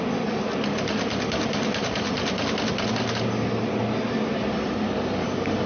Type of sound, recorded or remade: recorded